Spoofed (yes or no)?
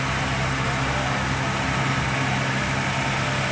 no